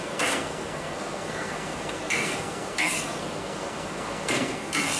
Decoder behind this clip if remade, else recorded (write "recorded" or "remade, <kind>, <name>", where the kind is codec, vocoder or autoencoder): remade, codec, SNAC